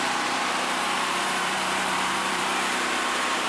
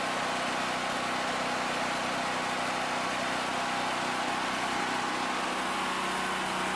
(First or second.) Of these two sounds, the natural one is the second